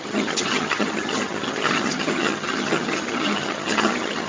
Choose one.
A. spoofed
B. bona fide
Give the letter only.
A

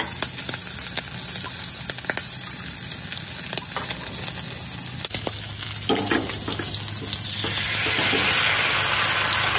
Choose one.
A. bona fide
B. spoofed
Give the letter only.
A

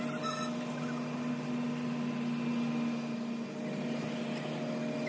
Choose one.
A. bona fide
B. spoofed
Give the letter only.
A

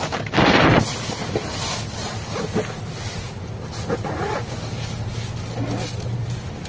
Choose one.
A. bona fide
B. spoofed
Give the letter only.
A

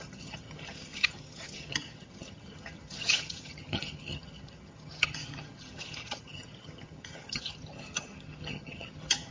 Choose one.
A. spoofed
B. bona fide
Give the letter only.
A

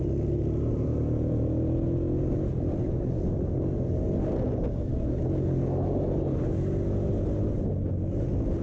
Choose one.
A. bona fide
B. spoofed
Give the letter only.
A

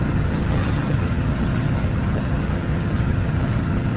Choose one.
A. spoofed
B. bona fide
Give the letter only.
A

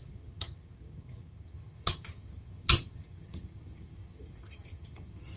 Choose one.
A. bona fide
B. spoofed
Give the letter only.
B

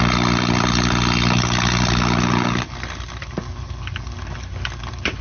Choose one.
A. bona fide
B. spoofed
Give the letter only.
A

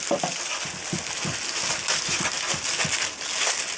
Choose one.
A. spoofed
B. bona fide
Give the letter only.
B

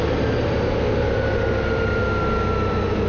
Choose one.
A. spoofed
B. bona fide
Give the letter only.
B